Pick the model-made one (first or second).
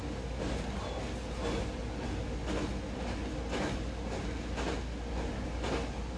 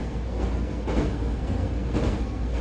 second